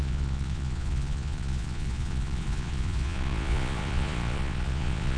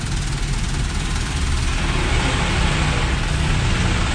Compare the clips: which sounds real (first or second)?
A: second